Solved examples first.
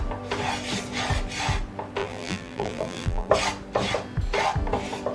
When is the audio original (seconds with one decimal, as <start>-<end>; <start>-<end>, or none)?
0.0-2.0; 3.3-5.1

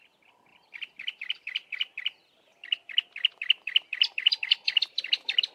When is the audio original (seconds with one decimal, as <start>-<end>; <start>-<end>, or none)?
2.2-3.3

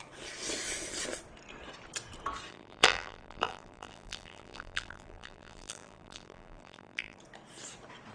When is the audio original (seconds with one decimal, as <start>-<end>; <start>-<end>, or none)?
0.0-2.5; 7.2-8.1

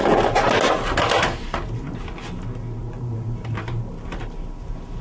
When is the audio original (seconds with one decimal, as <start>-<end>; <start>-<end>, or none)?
0.0-2.8; 3.8-5.0